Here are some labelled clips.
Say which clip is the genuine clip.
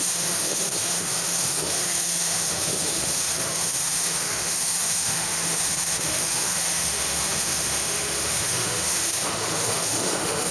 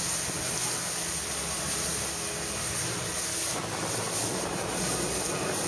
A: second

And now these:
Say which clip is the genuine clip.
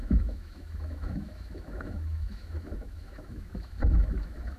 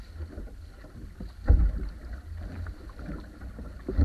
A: second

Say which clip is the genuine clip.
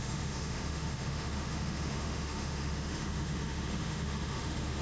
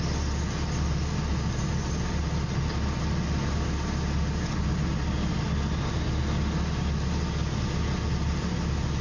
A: second